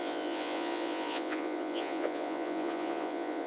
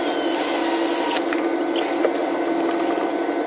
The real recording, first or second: second